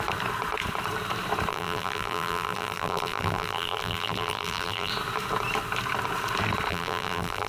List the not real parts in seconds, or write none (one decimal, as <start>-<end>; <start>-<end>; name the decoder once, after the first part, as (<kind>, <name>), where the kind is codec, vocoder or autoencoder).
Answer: 1.5-4.9 (vocoder, BigVGAN v2); 6.7-7.5